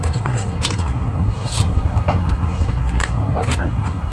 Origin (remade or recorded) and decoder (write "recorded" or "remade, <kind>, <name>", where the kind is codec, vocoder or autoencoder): remade, codec, SNAC